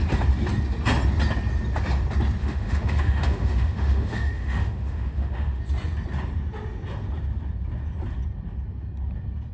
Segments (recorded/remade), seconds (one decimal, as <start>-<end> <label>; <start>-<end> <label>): 0.0-2.4 recorded; 2.4-5.6 remade; 5.6-9.5 recorded